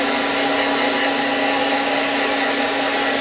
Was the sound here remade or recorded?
recorded